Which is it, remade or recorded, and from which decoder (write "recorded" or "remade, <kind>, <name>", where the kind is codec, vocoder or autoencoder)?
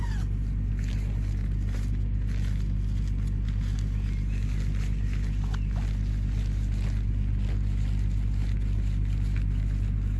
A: recorded